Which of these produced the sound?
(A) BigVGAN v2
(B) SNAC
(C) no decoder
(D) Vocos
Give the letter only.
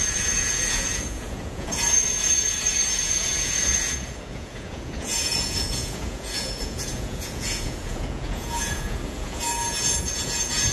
D